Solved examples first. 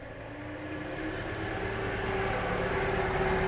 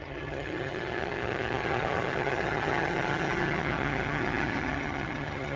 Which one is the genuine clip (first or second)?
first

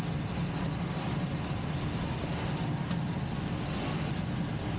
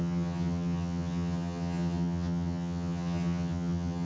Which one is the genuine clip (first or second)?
first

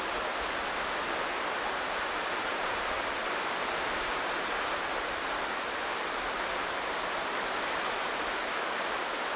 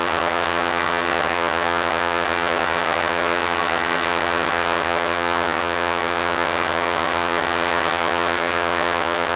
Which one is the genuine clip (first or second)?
first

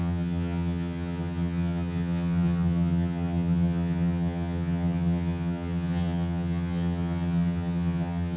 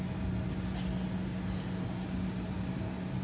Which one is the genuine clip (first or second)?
second